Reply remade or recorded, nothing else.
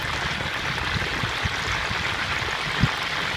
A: recorded